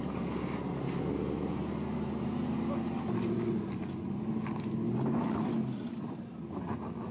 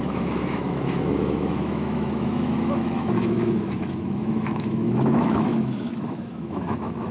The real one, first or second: first